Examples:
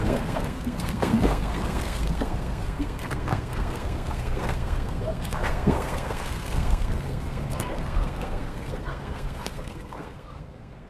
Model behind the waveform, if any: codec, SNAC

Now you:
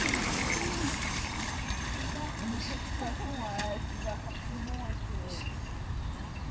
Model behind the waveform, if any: vocoder, BigVGAN v2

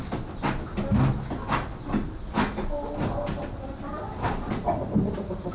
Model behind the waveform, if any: none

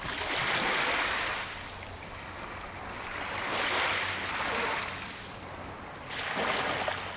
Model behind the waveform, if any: none